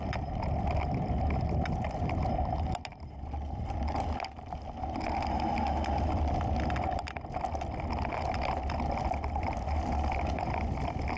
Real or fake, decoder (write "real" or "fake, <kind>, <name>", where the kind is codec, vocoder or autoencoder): real